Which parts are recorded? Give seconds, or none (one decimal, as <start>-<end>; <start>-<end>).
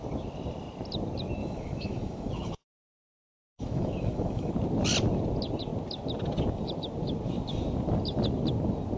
0.0-1.4; 4.5-9.0